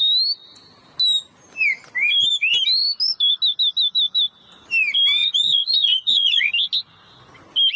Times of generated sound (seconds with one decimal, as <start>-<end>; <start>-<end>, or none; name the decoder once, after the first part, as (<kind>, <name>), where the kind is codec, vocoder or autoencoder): 5.2-6.5 (vocoder, Vocos)